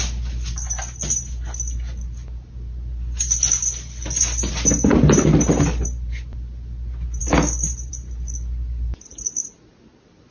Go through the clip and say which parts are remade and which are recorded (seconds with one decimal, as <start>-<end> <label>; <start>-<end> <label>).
0.0-10.3 recorded